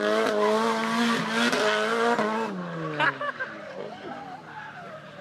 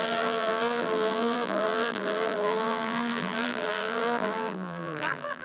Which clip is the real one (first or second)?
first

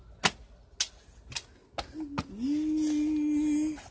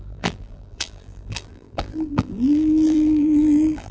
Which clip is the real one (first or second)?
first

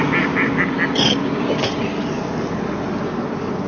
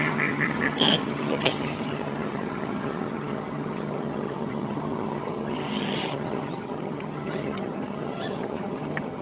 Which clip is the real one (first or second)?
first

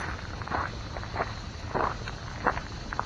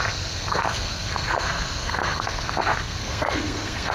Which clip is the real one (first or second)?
first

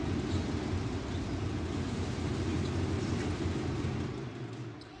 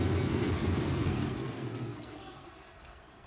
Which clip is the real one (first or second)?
first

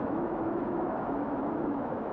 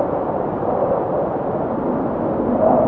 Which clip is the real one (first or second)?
second